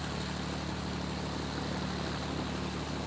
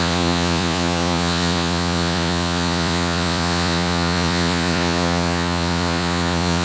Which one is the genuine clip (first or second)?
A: first